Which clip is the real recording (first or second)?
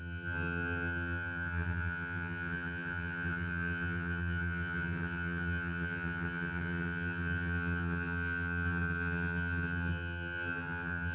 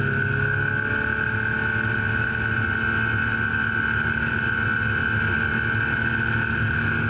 second